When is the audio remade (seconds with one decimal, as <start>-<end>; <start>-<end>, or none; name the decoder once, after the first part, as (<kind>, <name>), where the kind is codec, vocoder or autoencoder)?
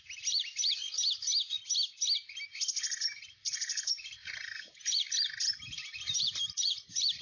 0.0-1.3 (vocoder, BigVGAN v2); 2.8-7.2